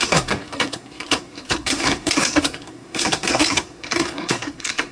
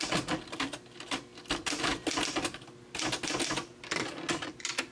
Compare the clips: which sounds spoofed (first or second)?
first